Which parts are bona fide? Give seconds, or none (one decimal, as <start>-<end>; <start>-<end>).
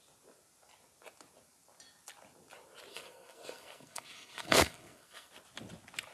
0.0-2.9; 5.3-6.1